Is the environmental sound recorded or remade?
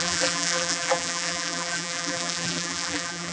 remade